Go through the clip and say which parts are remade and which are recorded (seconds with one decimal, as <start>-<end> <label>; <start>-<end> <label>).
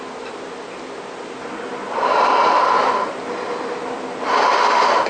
0.0-5.1 recorded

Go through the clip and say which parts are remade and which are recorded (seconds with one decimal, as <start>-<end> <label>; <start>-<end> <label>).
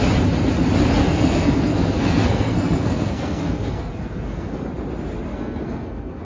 0.0-1.0 recorded; 1.0-4.7 remade; 4.7-5.3 recorded; 5.3-6.2 remade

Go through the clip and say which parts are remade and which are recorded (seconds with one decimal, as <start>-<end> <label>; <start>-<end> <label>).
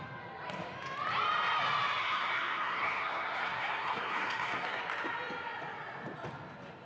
0.0-2.0 recorded; 2.0-4.8 remade; 4.8-6.9 recorded